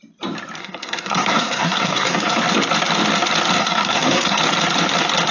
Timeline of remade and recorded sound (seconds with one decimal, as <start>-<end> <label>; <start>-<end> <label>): 0.0-0.6 recorded; 0.6-2.4 remade; 2.4-3.6 recorded; 3.6-4.4 remade; 4.4-5.3 recorded